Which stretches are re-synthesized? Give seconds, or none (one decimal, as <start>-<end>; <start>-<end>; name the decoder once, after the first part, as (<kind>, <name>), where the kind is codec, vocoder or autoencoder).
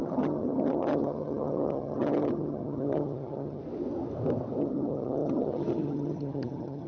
0.0-3.6 (vocoder, HiFi-GAN); 4.6-6.9